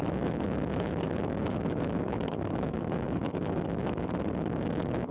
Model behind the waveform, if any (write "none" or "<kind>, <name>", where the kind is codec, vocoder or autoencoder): autoencoder, DAC-VAE